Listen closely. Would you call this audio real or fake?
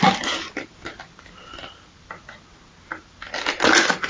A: real